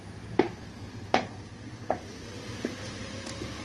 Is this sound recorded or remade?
remade